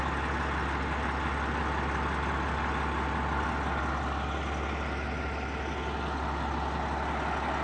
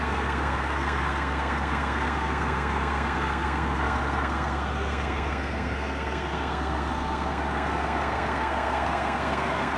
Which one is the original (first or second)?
first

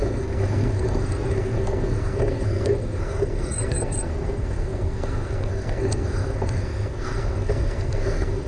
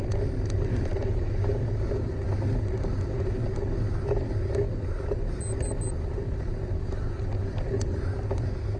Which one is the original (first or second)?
second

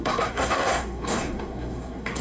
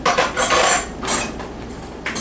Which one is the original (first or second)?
second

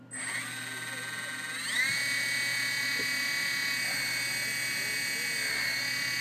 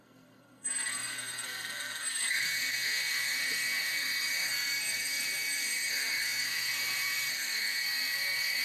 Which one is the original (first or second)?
first